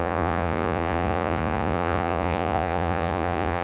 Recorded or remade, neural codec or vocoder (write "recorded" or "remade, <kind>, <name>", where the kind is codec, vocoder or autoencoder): remade, vocoder, Vocos